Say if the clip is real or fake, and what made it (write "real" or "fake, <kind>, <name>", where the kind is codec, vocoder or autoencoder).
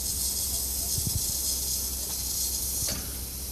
real